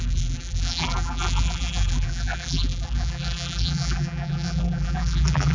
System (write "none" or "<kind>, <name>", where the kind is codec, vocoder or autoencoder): vocoder, BigVGAN v2